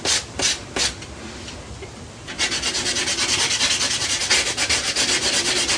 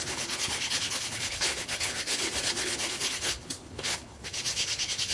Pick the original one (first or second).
first